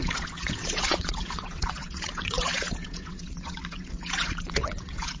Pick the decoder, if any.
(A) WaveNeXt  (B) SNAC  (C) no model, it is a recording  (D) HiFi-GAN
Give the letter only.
A